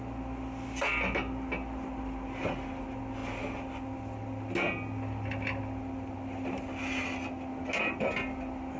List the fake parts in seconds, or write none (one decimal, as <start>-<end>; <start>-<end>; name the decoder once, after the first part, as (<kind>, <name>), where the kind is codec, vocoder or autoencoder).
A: none